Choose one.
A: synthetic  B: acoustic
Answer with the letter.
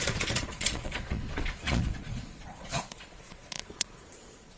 A